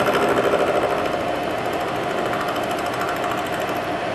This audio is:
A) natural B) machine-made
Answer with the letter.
A